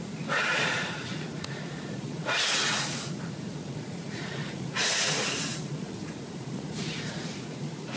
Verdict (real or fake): fake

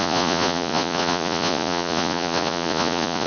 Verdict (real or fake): fake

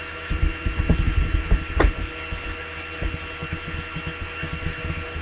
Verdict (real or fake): real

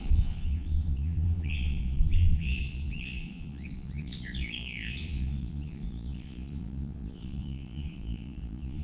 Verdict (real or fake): fake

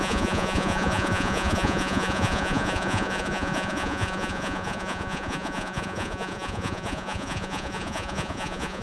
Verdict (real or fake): fake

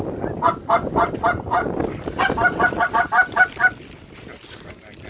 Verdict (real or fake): real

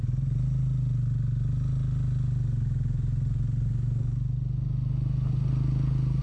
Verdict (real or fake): real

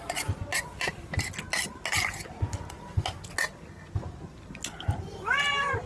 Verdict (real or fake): real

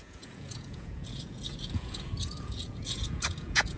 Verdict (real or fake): fake